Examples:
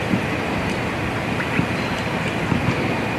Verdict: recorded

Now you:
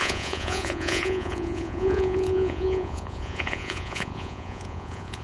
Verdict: remade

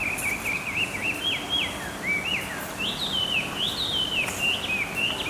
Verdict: recorded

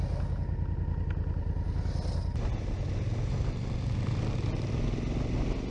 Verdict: recorded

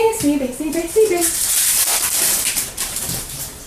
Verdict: remade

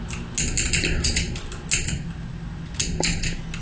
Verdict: recorded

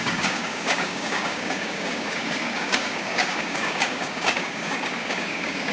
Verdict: remade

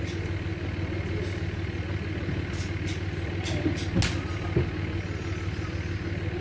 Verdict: recorded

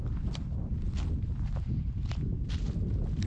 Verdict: remade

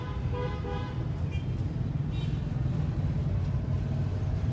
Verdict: recorded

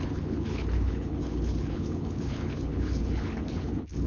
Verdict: remade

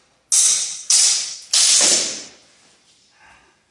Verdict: recorded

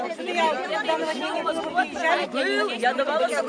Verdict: recorded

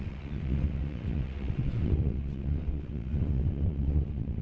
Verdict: remade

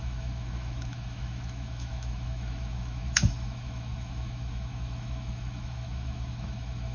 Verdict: remade